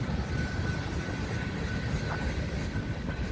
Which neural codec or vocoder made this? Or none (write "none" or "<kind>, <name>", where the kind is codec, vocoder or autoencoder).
none